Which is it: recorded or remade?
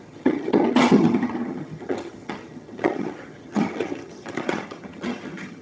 remade